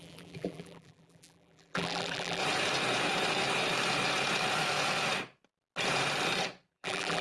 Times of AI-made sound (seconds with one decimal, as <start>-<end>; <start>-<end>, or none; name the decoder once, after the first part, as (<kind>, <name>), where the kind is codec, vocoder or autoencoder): 0.0-2.4 (vocoder, BigVGAN v2); 6.7-7.2